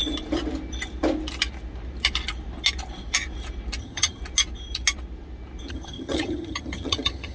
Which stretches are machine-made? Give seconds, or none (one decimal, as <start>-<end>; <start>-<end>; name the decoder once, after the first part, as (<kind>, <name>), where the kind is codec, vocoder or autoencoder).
3.8-4.2 (vocoder, HiFi-GAN); 5.7-7.3